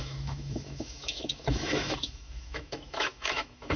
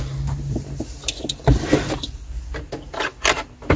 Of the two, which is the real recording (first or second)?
second